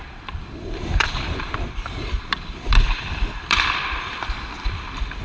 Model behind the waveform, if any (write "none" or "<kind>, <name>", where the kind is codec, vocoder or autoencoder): vocoder, BigVGAN v2